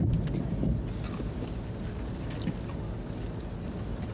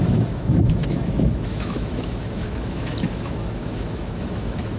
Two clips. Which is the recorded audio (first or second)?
first